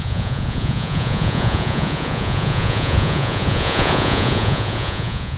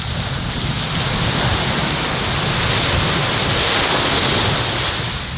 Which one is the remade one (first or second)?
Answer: first